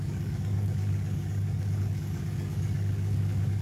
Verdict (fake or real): fake